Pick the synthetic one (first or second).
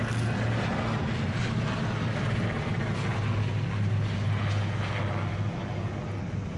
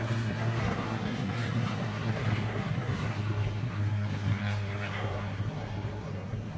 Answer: second